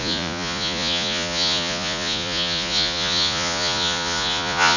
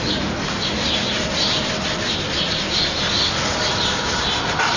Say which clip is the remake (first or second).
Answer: first